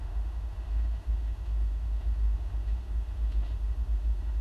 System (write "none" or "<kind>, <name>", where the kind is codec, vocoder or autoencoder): autoencoder, DAC-VAE